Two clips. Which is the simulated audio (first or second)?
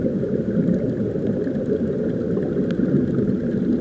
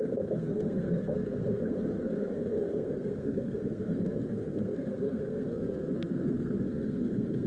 second